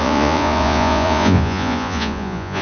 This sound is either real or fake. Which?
fake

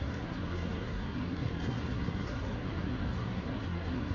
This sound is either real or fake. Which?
fake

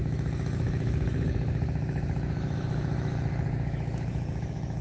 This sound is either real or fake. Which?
fake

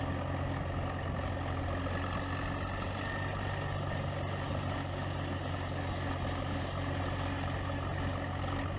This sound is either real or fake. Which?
real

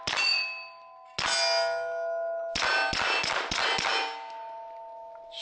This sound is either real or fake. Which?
real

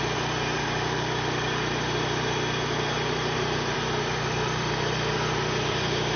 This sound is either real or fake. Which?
fake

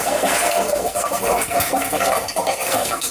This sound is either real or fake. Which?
fake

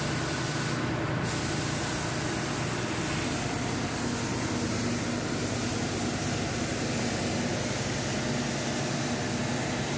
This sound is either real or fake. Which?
real